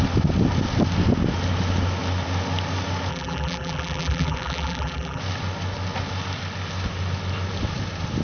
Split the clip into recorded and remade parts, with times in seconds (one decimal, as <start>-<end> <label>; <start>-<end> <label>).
0.0-3.1 recorded; 3.1-5.2 remade; 5.2-8.2 recorded